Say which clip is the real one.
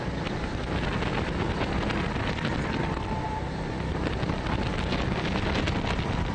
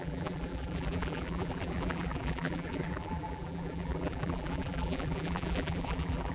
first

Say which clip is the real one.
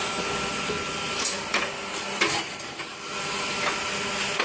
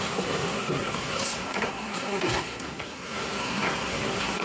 first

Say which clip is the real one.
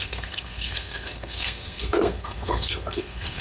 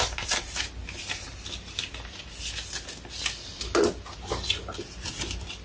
second